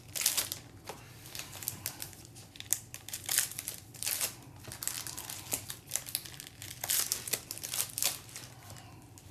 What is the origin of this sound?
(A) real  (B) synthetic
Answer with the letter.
A